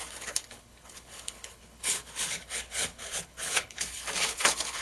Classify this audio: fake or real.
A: fake